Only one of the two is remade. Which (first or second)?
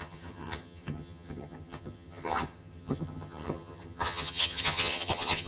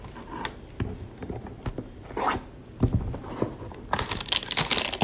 first